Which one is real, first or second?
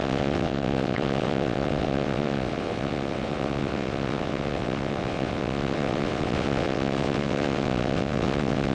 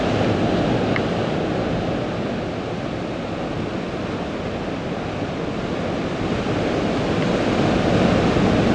second